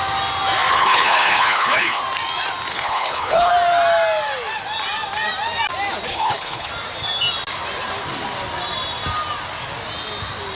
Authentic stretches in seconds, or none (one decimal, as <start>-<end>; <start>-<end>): 0.0-0.7; 2.0-2.7; 3.5-6.1; 6.7-10.5